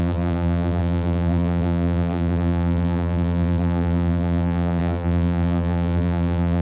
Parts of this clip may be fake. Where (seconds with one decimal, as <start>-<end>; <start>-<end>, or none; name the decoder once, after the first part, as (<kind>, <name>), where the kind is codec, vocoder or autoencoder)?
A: 0.0-6.6 (vocoder, BigVGAN v2)